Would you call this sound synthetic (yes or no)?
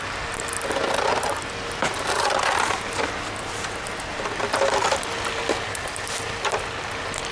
no